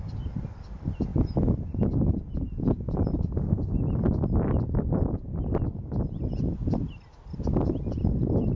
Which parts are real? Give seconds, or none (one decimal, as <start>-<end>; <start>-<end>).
0.0-8.5